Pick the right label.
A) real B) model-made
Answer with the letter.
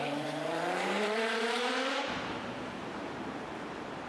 B